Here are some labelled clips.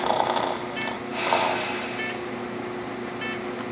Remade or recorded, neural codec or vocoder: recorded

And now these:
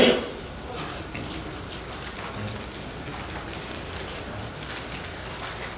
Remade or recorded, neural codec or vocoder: recorded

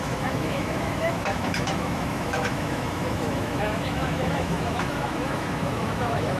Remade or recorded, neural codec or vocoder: remade, autoencoder, DAC-VAE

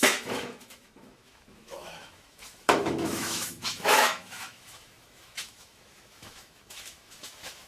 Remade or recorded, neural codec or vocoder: remade, autoencoder, DAC-VAE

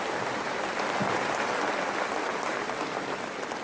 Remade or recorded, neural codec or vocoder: recorded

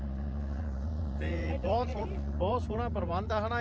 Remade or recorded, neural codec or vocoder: remade, vocoder, Vocos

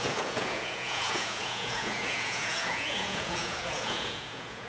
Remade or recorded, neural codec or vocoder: remade, vocoder, Vocos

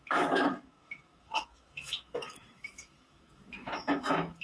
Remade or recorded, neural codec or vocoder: remade, autoencoder, DAC-VAE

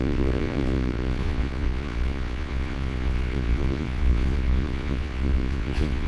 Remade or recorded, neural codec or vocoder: remade, vocoder, Vocos